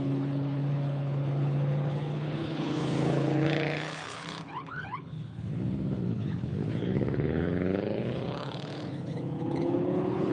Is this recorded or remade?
remade